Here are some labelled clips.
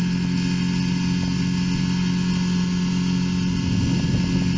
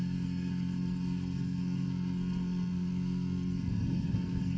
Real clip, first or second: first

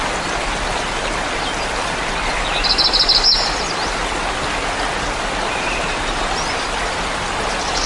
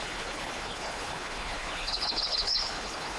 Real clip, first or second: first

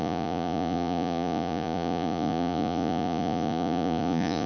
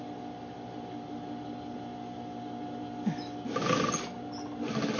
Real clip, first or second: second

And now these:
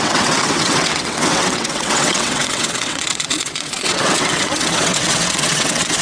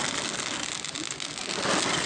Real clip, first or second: second